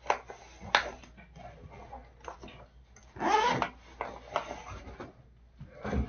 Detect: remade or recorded recorded